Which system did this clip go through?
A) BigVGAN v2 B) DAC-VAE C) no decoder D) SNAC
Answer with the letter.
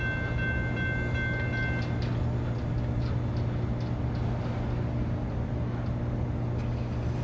C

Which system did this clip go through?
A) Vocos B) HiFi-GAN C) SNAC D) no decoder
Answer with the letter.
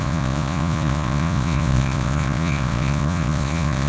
A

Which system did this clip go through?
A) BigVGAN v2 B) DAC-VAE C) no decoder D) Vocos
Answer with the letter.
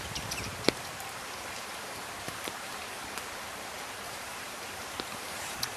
A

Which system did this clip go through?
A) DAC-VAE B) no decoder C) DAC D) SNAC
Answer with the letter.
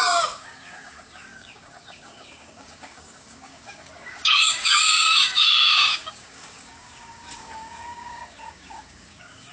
C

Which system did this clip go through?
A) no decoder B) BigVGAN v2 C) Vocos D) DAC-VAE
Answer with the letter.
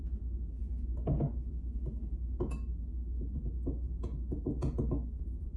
A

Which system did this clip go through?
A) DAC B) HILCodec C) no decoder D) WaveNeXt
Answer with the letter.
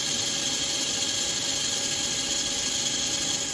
C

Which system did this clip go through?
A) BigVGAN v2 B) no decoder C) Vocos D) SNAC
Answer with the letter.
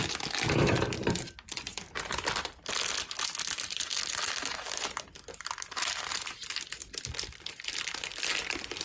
B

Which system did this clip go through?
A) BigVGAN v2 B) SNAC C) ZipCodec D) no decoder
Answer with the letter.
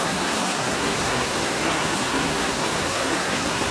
B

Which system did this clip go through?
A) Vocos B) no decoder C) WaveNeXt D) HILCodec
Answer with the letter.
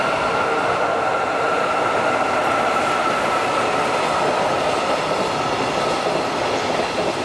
B